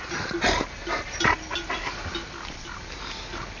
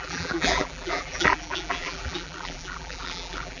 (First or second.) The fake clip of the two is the second